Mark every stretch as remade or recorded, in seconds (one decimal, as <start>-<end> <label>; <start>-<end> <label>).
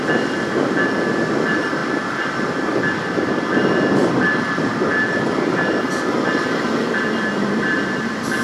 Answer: 0.0-8.4 remade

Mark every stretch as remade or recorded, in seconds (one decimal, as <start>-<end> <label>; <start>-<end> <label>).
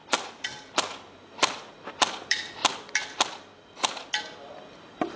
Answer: 0.0-0.7 remade; 0.7-5.2 recorded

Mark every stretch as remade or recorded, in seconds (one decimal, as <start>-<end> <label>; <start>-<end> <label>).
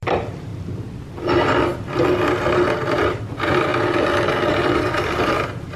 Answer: 0.0-0.5 remade; 0.5-1.1 recorded; 1.1-3.7 remade; 3.7-4.5 recorded; 4.5-5.8 remade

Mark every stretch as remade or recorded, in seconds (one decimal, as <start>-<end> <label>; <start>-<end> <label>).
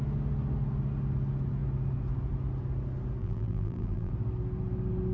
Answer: 0.0-3.2 recorded; 3.2-4.1 remade; 4.1-5.1 recorded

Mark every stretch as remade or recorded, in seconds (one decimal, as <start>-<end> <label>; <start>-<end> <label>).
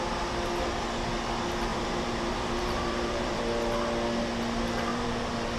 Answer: 0.0-1.7 recorded; 1.7-3.4 remade; 3.4-4.9 recorded; 4.9-5.6 remade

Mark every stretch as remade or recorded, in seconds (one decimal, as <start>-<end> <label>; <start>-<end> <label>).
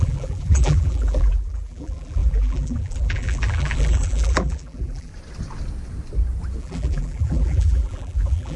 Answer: 0.0-5.1 remade; 5.1-6.6 recorded; 6.6-8.6 remade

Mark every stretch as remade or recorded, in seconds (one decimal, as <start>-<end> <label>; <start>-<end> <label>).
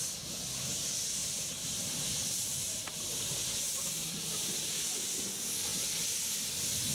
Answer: 0.0-1.2 recorded; 1.2-3.5 remade; 3.5-4.0 recorded; 4.0-4.7 remade; 4.7-6.9 recorded